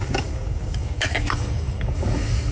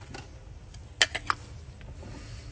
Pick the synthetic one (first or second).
first